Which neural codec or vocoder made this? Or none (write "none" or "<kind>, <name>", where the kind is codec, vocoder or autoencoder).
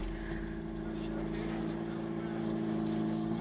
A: none